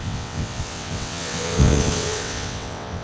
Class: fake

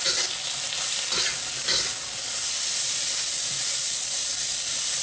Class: real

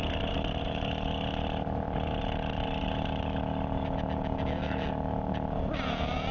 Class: real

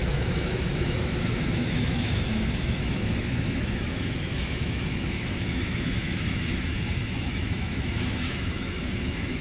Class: fake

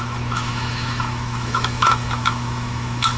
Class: fake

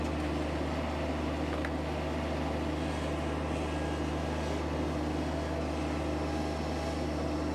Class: real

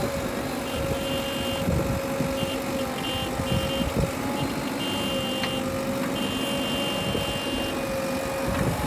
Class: real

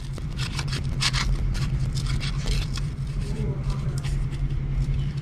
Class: fake